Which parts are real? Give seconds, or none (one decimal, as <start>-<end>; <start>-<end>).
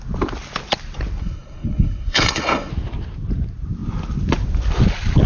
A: 0.0-1.2; 2.7-5.3